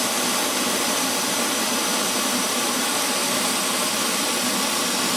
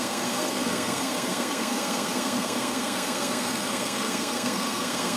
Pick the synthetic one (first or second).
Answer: second